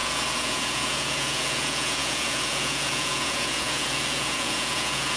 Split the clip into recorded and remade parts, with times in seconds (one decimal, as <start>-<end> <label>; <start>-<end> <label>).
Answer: 0.0-5.2 remade